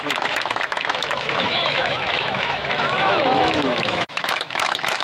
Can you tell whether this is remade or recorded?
remade